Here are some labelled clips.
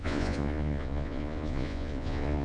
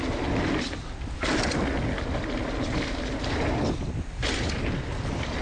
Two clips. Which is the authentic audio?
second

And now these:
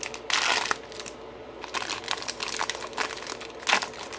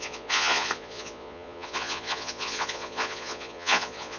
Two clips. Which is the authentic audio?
first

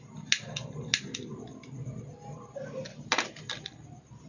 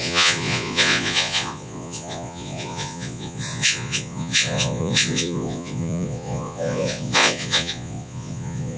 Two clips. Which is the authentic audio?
first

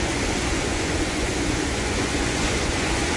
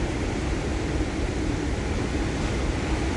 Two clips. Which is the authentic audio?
second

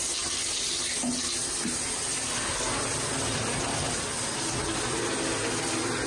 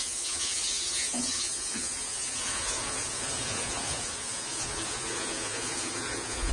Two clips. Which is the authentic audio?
first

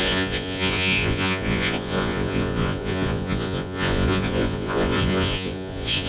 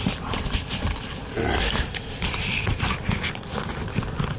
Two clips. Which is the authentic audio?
second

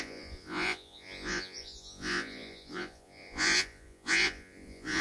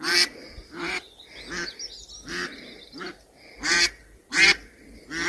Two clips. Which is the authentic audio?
second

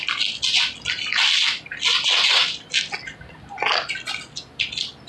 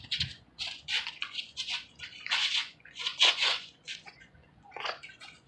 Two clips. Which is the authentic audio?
first